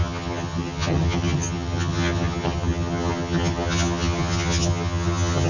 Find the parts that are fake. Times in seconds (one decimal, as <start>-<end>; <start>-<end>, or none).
0.0-5.5